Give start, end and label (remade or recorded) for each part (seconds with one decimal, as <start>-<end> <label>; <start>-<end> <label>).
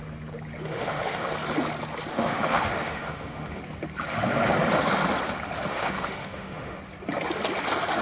0.0-0.6 recorded; 0.6-1.3 remade; 1.3-2.1 recorded; 2.1-3.6 remade; 3.6-5.7 recorded; 5.7-6.8 remade; 6.8-8.0 recorded